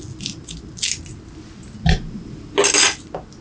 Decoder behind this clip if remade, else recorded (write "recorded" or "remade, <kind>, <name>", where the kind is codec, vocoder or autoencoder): recorded